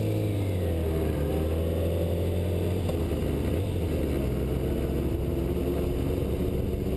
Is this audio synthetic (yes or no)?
no